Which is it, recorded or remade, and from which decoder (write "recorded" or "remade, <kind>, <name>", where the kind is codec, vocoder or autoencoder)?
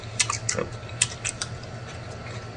recorded